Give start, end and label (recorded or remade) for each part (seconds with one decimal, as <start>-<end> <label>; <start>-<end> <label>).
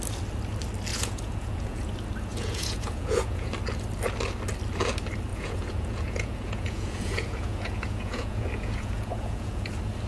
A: 0.0-0.9 recorded; 0.9-1.9 remade; 1.9-2.3 recorded; 2.3-3.5 remade; 3.5-5.3 recorded; 5.3-9.7 remade; 9.7-10.1 recorded